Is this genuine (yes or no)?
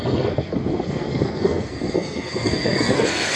no